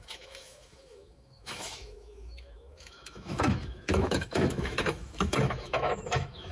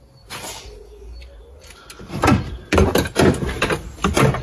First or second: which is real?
second